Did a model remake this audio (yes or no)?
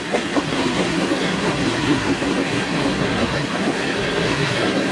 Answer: yes